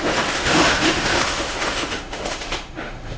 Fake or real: fake